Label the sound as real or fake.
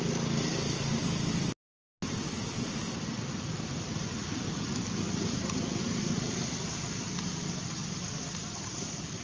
real